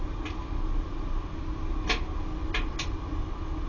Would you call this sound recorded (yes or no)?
yes